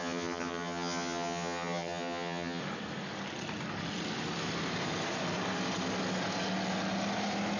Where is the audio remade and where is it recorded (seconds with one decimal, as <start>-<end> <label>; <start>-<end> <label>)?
0.0-2.6 remade; 2.6-7.6 recorded